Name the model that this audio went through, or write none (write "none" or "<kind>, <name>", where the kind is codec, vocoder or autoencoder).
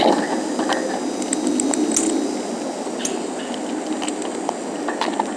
none